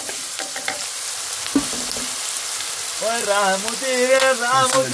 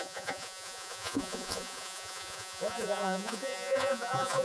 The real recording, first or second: first